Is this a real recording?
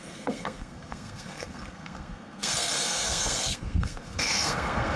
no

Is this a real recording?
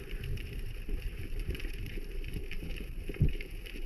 no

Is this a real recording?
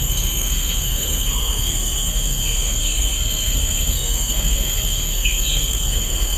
no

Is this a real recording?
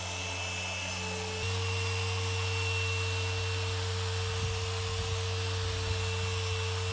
yes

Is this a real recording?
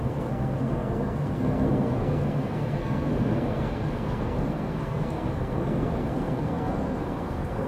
no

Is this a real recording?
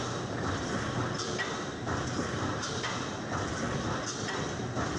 no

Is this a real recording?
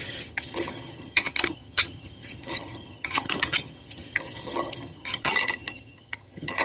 no